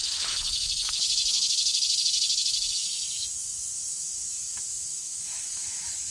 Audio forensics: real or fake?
fake